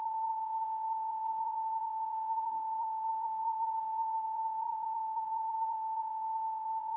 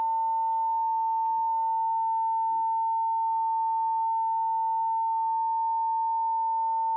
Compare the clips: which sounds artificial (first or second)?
first